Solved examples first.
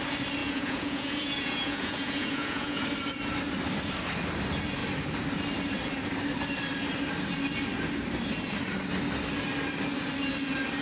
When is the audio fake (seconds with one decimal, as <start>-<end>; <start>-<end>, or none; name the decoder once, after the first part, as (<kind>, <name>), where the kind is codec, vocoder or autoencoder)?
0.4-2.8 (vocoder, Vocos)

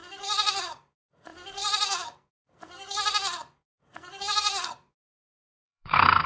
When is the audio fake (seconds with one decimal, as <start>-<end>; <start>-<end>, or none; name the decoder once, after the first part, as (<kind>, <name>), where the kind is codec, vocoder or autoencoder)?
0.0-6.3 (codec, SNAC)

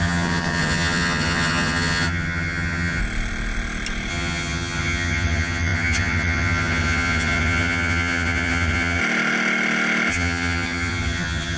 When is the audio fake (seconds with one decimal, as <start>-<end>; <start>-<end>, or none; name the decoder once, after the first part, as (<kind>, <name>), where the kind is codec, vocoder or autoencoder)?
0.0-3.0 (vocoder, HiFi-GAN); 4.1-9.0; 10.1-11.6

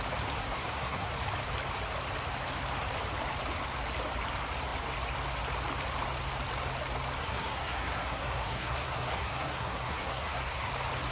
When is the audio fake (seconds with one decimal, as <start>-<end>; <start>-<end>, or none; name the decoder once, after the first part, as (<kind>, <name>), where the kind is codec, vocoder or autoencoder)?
0.4-1.1 (codec, SNAC); 7.2-10.7

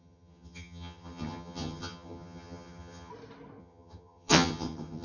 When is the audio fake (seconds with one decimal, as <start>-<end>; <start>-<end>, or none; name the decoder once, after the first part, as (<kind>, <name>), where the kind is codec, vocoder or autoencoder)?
0.0-3.1 (vocoder, HiFi-GAN); 3.6-5.0